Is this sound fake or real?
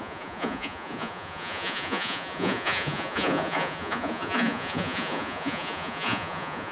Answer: fake